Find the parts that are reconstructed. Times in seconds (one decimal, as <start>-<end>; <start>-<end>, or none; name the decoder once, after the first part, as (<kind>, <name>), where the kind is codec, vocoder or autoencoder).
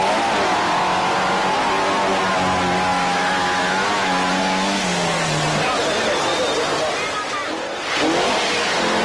none